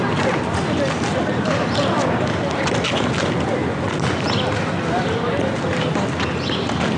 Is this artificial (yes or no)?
no